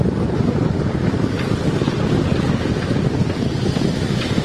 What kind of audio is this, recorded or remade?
recorded